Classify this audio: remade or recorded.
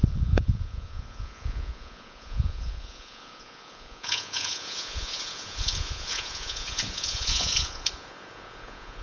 remade